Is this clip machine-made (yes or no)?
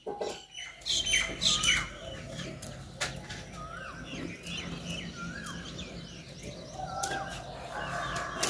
no